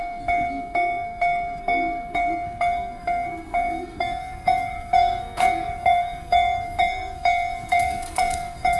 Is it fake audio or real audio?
fake